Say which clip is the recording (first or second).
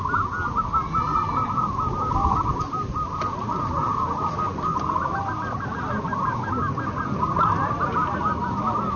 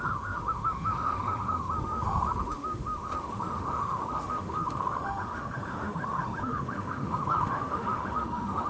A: first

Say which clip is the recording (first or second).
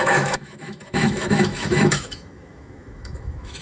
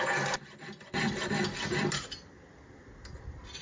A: second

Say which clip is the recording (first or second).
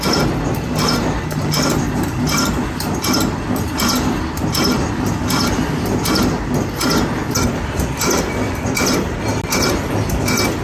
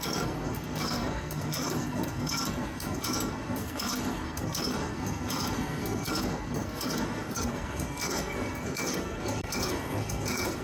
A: first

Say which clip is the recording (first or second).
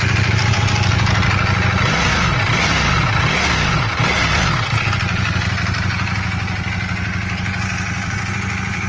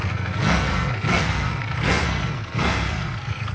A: first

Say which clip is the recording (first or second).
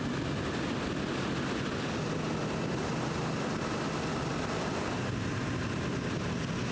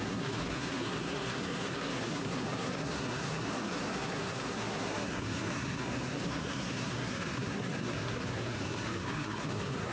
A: first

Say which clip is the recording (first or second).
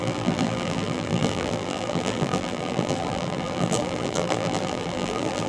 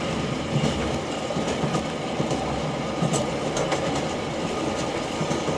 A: second